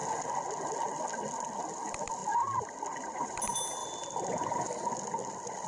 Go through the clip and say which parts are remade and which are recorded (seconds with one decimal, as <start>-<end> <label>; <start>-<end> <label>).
0.0-2.2 recorded; 2.2-3.4 remade; 3.4-3.8 recorded; 3.8-4.6 remade; 4.6-5.7 recorded